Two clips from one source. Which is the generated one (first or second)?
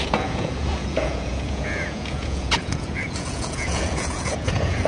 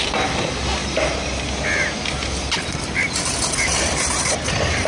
first